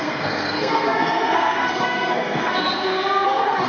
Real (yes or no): no